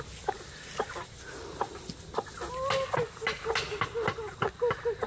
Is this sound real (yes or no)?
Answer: yes